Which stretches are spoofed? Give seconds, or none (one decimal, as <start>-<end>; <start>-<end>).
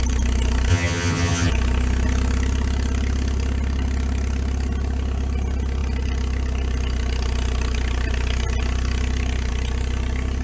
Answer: 0.7-1.5